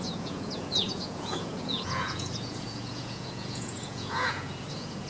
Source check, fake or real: fake